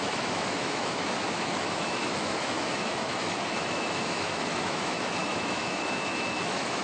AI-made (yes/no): yes